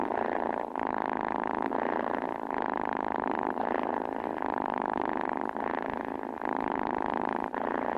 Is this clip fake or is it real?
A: real